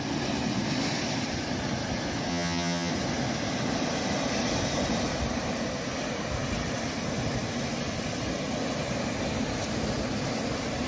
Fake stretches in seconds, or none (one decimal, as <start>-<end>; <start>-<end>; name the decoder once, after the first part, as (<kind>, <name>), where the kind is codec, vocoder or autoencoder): 2.3-2.9 (vocoder, HiFi-GAN)